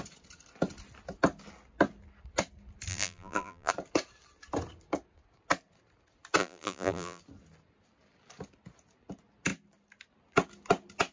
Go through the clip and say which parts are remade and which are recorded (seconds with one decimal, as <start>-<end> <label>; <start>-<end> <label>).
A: 0.0-2.9 recorded; 2.9-3.7 remade; 3.7-6.4 recorded; 6.4-7.2 remade; 7.2-11.1 recorded